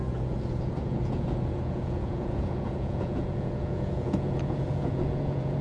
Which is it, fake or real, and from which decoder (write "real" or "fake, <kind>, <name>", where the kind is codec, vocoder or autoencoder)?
fake, vocoder, Vocos